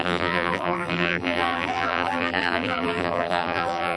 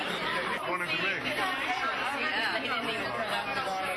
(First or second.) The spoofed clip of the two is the first